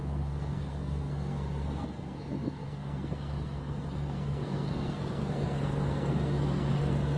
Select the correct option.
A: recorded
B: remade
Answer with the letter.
B